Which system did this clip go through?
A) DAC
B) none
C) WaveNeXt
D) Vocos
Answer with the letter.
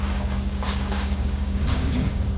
A